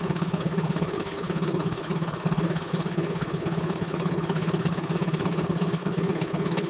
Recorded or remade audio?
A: remade